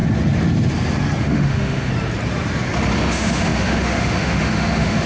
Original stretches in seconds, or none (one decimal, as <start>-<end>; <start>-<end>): 0.0-1.2; 1.9-3.0